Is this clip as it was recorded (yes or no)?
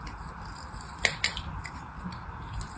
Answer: yes